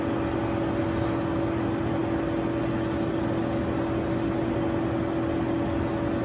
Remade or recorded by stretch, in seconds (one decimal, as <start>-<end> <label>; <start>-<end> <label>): 0.0-6.2 recorded